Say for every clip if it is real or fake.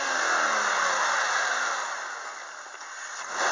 real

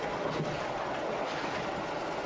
real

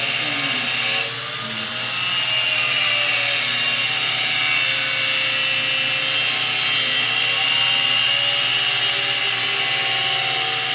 real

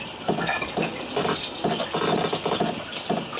real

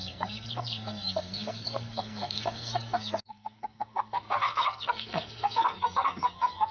fake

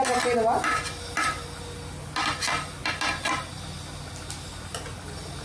real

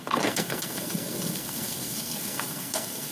fake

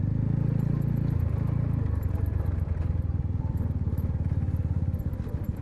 real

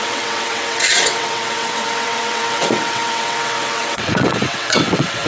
fake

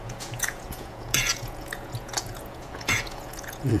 fake